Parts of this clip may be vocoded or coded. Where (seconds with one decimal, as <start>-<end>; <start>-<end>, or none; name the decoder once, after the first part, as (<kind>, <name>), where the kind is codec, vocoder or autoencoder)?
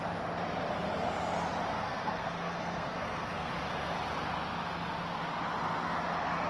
1.7-3.5 (codec, SNAC)